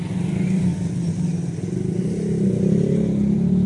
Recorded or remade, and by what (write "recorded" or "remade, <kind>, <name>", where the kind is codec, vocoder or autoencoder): recorded